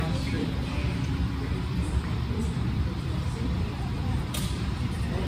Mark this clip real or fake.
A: fake